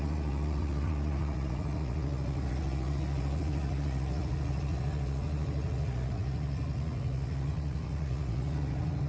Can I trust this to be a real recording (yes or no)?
no